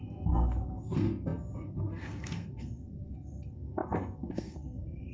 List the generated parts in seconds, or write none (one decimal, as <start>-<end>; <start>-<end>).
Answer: 0.0-5.1